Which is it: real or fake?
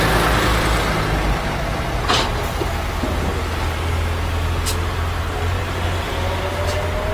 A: real